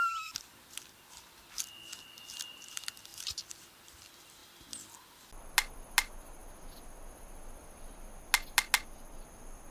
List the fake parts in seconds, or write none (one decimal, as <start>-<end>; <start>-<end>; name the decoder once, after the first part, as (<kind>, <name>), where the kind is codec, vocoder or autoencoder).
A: none